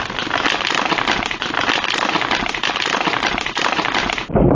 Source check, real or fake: fake